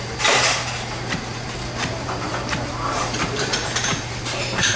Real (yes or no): no